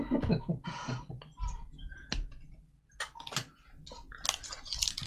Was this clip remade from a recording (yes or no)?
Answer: no